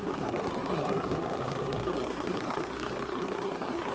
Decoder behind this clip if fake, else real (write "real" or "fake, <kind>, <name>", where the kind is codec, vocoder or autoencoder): fake, codec, SNAC